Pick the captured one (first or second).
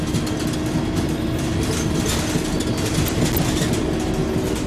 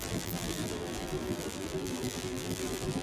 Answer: first